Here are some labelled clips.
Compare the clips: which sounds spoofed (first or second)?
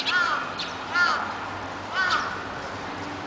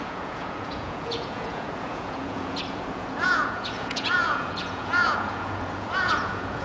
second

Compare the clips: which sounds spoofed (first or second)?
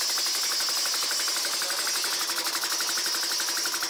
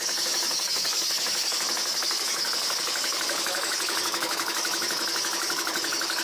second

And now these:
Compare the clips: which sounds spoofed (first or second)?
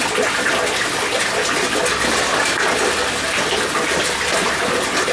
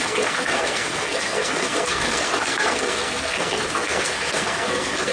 second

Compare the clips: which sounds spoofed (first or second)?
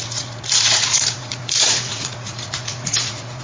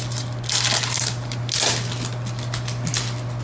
first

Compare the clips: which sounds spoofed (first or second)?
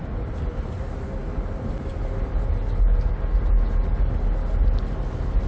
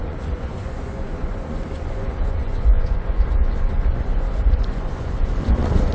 second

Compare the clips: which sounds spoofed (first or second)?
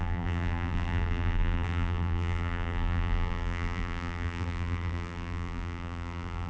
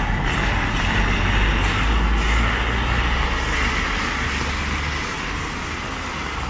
first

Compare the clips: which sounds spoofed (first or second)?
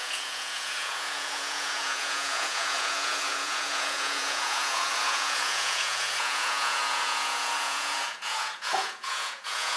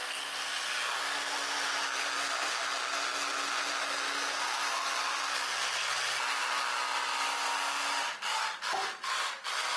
first